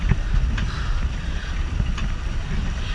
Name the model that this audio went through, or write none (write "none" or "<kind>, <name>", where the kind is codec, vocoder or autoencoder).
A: vocoder, BigVGAN v2